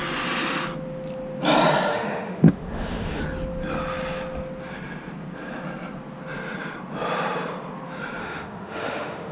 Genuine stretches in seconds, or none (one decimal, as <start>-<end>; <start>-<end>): 0.0-1.9; 3.2-8.2